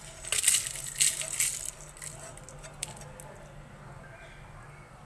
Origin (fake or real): real